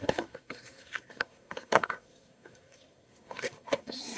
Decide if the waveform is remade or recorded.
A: remade